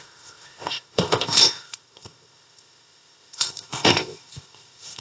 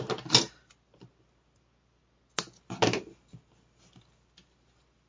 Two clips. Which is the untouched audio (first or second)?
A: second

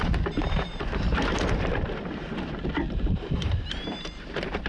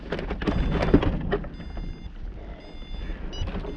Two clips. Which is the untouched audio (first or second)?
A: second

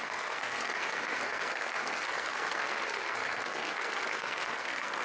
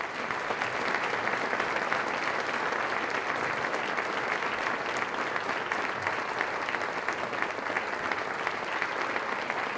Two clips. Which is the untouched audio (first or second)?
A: second